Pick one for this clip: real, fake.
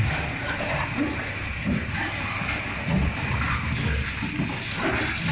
real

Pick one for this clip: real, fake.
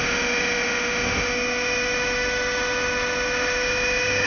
fake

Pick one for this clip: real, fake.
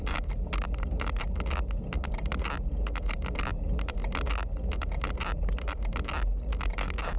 real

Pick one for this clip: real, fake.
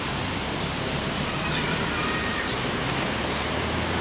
real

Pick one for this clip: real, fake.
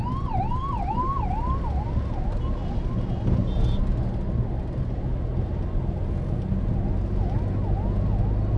real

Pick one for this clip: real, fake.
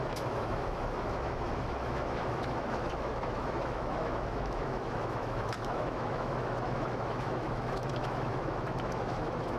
fake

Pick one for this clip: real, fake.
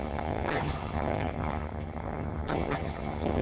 fake